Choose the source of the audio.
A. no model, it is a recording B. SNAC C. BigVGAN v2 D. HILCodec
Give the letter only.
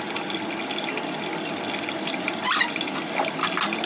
A